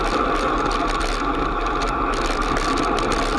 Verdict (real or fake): real